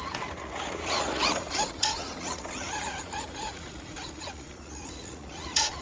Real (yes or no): no